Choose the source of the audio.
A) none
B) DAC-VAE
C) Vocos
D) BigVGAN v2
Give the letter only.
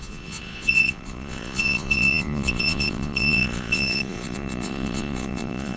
C